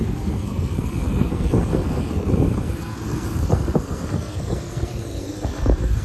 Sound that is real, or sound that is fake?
fake